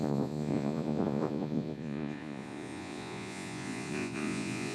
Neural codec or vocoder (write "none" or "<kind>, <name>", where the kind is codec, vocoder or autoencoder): vocoder, Vocos